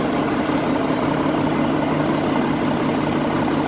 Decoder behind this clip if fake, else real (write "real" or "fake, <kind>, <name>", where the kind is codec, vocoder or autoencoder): real